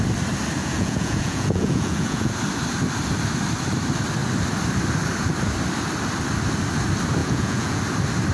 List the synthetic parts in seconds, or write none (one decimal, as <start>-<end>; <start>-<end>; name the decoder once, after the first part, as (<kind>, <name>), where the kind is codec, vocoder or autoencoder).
0.6-2.3 (vocoder, Vocos); 7.2-7.8